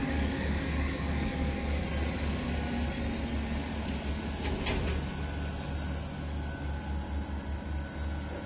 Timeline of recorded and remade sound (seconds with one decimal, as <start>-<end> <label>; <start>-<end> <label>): 0.0-1.8 remade; 1.8-8.5 recorded